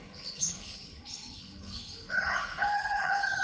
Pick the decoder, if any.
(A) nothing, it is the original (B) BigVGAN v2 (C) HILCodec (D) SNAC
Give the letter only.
C